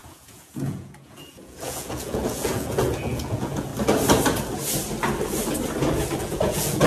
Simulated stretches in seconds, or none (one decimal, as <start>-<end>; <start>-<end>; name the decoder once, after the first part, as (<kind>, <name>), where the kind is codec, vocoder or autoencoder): 0.0-3.7 (vocoder, Vocos); 6.2-6.9